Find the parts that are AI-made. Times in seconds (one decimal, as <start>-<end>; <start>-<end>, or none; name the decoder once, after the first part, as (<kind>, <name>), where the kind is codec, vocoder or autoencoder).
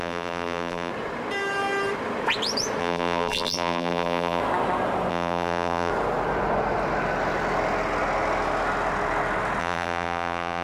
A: 0.0-0.9 (vocoder, BigVGAN v2); 2.8-4.4; 5.1-5.9; 9.6-10.6